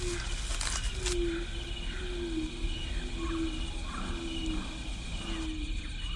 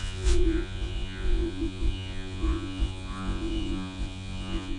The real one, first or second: first